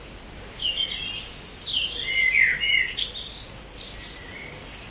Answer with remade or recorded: recorded